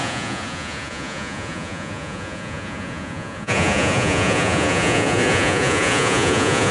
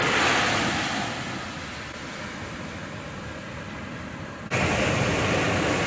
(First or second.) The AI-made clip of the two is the first